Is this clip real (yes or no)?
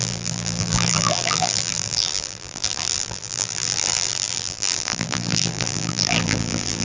no